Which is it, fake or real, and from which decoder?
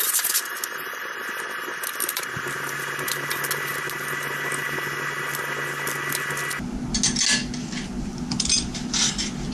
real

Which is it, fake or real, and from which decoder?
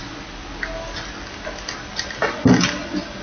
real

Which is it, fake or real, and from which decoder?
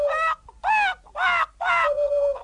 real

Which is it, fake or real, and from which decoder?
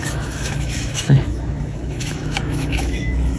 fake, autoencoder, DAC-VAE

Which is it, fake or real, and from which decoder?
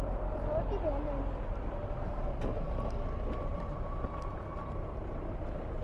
real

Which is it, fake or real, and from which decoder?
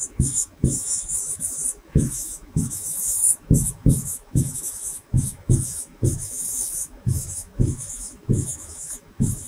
fake, autoencoder, DAC-VAE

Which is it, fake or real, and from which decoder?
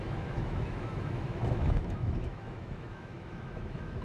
fake, autoencoder, DAC-VAE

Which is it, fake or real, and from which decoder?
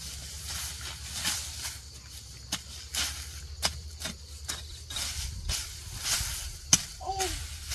real